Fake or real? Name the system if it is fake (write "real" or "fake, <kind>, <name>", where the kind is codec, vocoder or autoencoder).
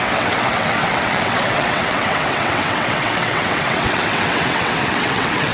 fake, vocoder, WaveNeXt